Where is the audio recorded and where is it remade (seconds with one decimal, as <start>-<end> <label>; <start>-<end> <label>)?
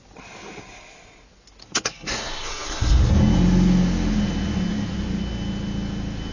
0.0-1.6 recorded; 1.6-3.1 remade; 3.1-6.3 recorded